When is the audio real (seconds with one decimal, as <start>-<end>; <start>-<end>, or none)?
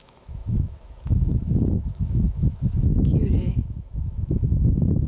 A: none